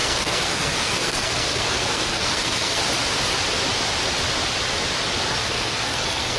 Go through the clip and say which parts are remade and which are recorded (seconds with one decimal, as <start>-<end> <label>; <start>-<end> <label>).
0.0-2.8 remade; 2.8-5.3 recorded; 5.3-6.4 remade